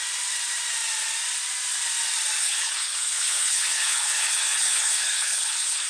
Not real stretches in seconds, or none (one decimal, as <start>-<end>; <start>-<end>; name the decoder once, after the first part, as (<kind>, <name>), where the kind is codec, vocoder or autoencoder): 2.4-5.9 (codec, HILCodec)